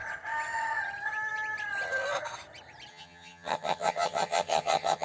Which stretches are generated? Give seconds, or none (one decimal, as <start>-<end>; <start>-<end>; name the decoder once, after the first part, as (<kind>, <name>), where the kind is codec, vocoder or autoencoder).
2.9-5.0 (vocoder, HiFi-GAN)